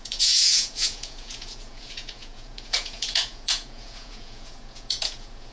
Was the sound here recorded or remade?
remade